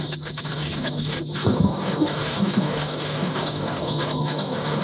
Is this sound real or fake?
fake